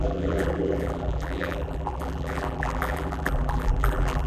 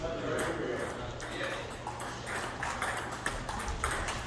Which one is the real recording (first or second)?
second